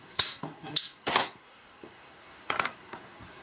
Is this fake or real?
fake